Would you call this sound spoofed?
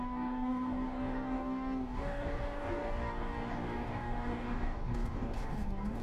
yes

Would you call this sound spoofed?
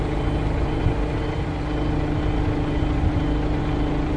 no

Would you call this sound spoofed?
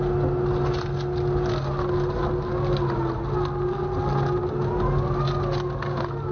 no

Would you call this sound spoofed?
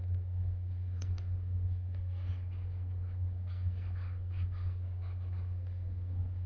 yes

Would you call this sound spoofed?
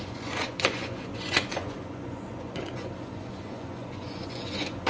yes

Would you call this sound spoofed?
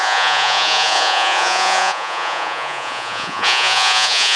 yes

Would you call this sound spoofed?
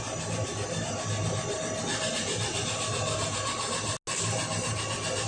no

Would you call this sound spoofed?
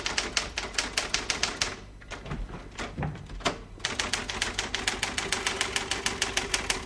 no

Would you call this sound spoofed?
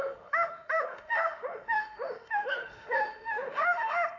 yes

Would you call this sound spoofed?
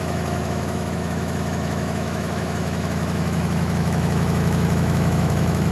yes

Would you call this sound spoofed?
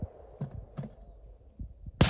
no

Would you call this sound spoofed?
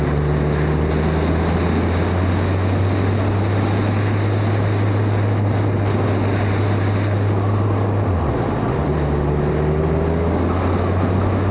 no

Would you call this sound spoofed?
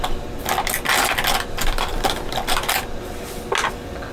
no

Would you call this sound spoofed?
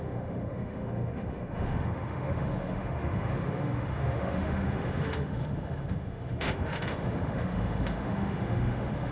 yes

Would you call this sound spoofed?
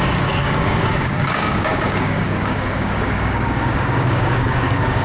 yes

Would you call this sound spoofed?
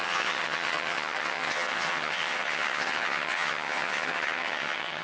yes